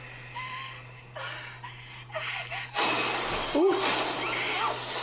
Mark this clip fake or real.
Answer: real